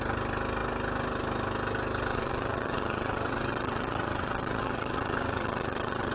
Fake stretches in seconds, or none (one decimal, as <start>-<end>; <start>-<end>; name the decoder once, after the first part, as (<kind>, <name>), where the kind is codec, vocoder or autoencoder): 2.1-6.1 (vocoder, WaveNeXt)